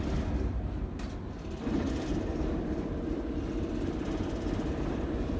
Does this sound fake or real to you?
real